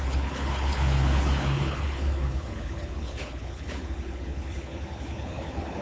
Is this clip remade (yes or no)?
yes